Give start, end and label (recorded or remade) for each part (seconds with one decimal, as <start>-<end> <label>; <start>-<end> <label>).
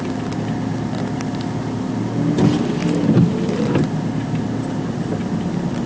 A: 0.0-5.9 recorded